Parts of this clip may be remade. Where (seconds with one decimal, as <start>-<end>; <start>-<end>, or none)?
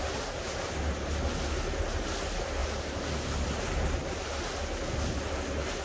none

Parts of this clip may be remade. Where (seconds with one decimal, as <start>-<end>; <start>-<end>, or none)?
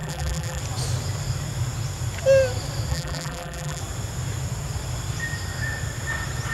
0.0-0.6; 2.9-3.8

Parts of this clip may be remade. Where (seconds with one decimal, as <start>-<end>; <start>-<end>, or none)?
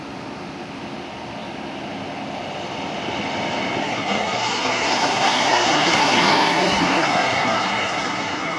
3.8-8.6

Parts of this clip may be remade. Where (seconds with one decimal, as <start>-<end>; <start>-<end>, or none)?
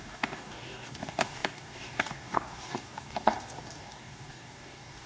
0.0-5.1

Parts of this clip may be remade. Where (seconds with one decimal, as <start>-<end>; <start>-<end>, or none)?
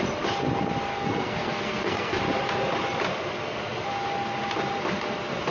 0.9-2.2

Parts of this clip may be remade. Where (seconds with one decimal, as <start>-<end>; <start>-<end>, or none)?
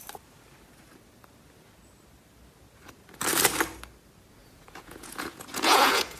4.4-6.2